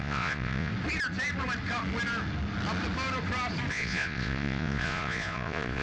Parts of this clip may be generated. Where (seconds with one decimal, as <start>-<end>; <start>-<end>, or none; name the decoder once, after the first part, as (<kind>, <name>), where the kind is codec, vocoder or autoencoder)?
0.0-0.7 (vocoder, Vocos); 3.7-5.8